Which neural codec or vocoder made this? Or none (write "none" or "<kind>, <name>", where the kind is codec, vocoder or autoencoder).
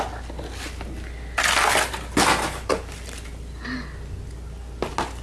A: none